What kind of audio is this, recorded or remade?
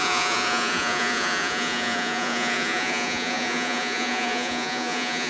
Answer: remade